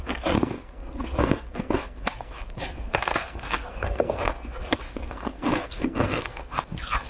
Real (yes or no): no